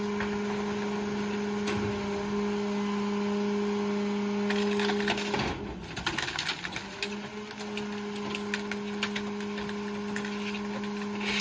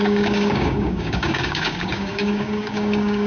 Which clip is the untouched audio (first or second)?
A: first